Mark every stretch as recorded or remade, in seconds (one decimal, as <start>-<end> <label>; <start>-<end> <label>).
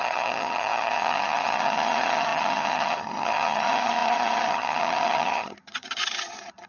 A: 0.0-6.7 remade